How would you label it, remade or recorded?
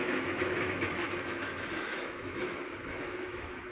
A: remade